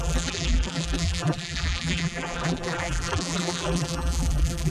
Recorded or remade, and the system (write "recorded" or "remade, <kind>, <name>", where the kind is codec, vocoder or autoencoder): remade, vocoder, BigVGAN v2